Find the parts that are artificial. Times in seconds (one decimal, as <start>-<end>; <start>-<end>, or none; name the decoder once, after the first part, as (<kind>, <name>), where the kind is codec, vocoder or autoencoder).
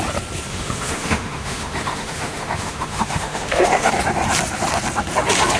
0.5-3.9 (autoencoder, DAC-VAE)